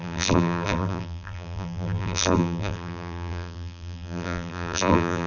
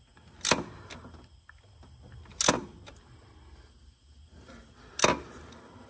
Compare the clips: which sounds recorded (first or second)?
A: second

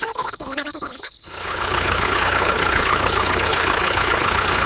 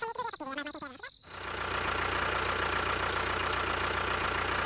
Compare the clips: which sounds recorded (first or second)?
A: second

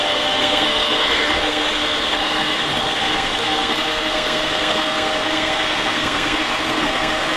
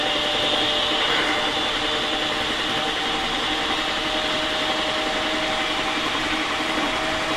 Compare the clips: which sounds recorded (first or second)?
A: second